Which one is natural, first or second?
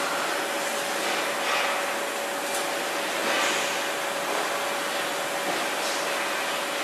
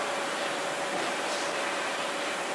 first